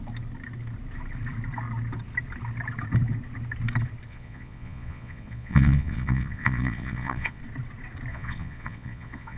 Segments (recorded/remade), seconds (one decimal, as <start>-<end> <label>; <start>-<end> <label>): 0.0-4.1 recorded; 4.1-7.4 remade; 7.4-8.1 recorded; 8.1-9.4 remade